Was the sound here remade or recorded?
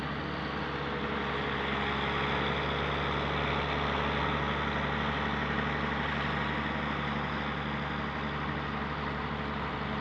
recorded